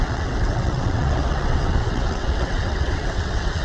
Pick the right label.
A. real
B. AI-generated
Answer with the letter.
B